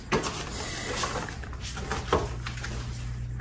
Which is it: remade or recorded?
recorded